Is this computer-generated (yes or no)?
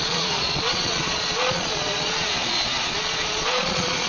yes